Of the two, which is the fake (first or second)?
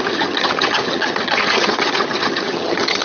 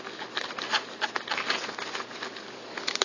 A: first